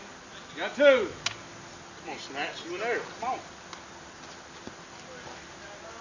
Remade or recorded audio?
recorded